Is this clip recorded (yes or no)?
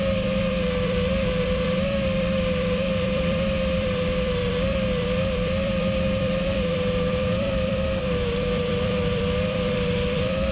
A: no